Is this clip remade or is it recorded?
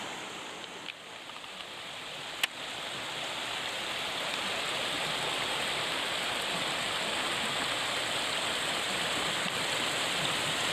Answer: recorded